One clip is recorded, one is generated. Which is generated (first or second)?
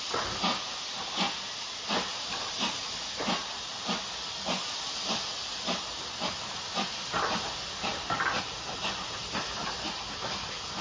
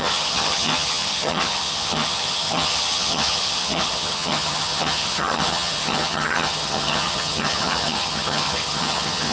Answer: second